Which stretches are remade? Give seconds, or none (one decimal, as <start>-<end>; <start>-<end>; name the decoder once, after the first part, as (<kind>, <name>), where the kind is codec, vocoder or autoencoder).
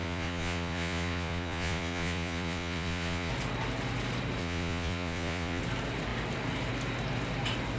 0.0-3.3 (vocoder, Vocos); 4.4-5.6